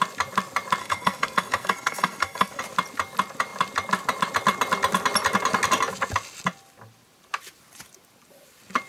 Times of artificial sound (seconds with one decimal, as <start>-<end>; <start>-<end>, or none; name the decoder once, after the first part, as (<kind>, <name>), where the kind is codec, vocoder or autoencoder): 0.8-2.6 (codec, SNAC)